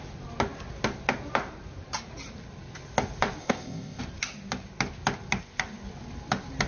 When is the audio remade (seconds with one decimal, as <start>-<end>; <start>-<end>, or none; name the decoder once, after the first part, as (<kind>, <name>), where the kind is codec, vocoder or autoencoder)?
3.4-4.0 (codec, ZipCodec)